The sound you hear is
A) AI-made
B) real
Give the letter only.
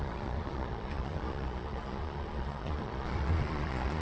A